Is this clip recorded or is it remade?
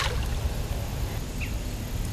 recorded